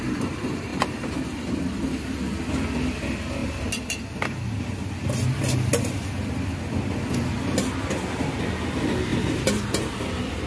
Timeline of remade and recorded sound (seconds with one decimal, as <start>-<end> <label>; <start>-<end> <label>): 0.0-10.5 recorded